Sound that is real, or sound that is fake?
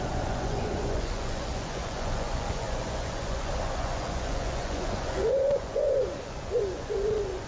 fake